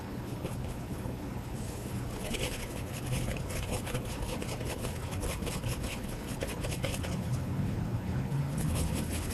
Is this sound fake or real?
fake